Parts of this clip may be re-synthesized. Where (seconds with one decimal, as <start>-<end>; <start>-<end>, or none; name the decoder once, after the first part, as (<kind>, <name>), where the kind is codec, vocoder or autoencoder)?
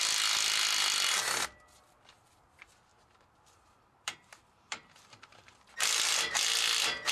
2.9-5.7 (vocoder, BigVGAN v2)